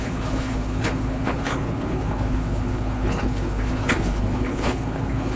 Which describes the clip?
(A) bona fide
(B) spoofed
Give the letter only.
B